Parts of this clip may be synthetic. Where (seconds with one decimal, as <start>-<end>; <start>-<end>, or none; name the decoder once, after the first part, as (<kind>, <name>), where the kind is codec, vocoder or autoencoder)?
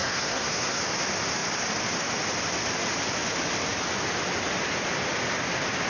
0.0-0.8 (codec, SNAC)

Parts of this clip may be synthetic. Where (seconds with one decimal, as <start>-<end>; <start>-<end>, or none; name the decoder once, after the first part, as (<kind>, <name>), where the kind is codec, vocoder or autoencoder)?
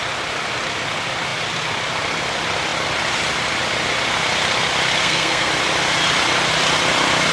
5.0-5.5 (codec, SNAC)